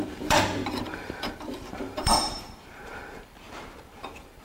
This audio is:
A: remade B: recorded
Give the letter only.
A